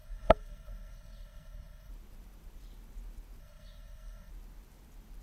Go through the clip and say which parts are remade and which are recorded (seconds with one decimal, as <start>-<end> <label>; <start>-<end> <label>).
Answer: 0.0-1.9 remade; 1.9-3.4 recorded; 3.4-4.3 remade; 4.3-5.2 recorded